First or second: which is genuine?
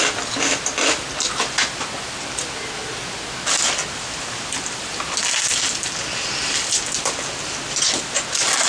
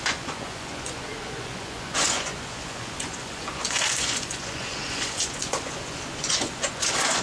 first